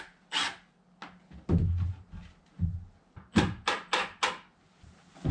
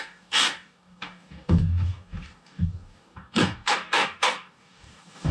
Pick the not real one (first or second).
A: second